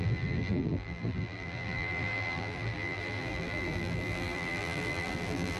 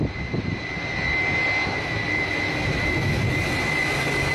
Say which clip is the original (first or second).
second